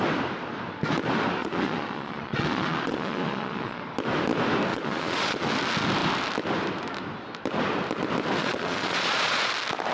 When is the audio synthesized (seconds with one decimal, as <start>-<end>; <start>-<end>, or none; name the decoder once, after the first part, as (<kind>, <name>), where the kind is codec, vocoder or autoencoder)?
1.4-3.8 (vocoder, Vocos); 4.7-5.5; 8.4-9.5